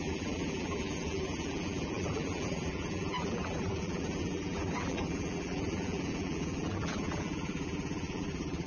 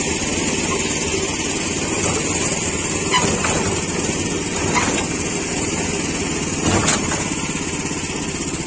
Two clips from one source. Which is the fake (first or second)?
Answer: first